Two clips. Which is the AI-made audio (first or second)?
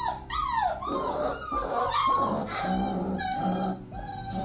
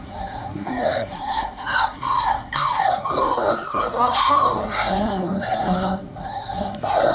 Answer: second